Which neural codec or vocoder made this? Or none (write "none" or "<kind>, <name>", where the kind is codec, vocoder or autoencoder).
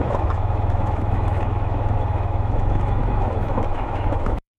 autoencoder, DAC-VAE